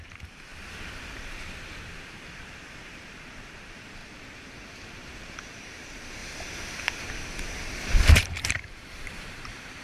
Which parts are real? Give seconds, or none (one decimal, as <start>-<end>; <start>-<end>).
4.0-4.8; 6.2-7.3